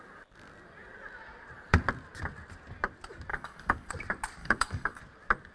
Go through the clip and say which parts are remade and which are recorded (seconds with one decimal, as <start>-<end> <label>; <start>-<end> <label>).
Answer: 0.0-3.3 recorded; 3.3-3.9 remade; 3.9-4.4 recorded; 4.4-5.0 remade; 5.0-5.5 recorded